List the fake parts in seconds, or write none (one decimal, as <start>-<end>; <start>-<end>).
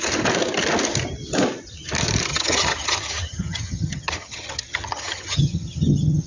2.3-6.3